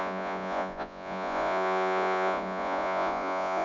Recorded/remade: remade